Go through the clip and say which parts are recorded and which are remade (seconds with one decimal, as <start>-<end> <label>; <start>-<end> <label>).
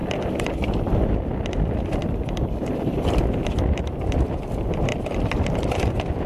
0.0-6.3 recorded